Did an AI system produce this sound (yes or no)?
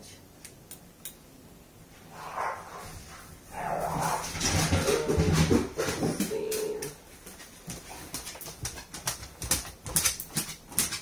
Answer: no